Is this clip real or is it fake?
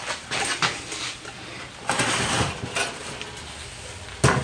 real